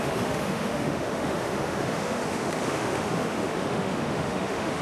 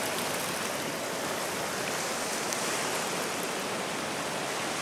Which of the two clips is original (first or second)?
second